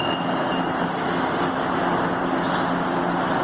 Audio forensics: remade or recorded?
recorded